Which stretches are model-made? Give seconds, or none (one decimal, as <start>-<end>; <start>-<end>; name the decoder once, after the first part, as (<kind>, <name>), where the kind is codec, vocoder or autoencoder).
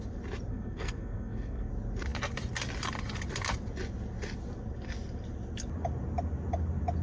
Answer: 0.5-1.7 (codec, SNAC)